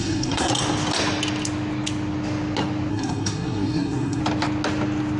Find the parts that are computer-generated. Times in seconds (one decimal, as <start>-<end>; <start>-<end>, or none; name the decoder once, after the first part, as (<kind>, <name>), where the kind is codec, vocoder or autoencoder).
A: 0.0-0.5 (codec, SNAC); 2.9-4.2